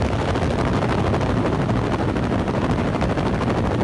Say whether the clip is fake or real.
real